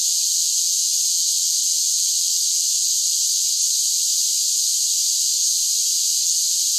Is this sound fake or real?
real